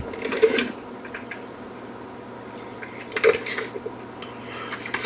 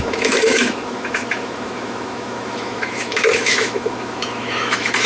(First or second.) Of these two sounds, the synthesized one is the second